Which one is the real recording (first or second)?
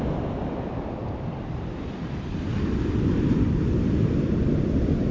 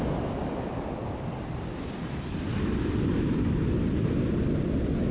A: second